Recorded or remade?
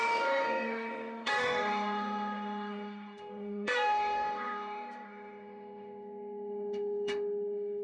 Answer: remade